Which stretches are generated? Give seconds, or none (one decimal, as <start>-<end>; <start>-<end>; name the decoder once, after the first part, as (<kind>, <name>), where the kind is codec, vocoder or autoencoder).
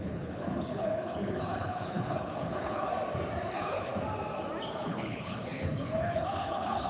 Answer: 0.0-2.9 (codec, HILCodec); 3.5-3.9; 4.7-6.9